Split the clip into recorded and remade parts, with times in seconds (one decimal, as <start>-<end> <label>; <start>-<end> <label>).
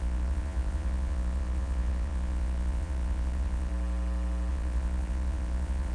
0.0-3.7 remade; 3.7-4.5 recorded; 4.5-5.9 remade